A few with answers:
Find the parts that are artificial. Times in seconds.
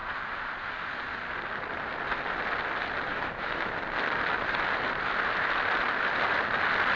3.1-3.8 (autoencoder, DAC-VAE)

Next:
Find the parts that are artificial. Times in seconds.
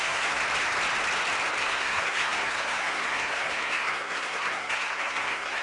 0.0-0.4 (codec, SNAC); 1.6-5.6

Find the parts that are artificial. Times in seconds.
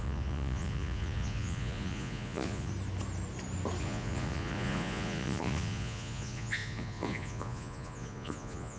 0.0-2.7 (vocoder, Vocos); 3.8-8.8